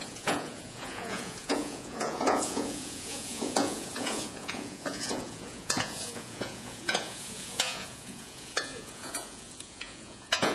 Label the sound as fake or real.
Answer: fake